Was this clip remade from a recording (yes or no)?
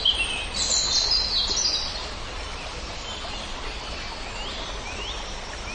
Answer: no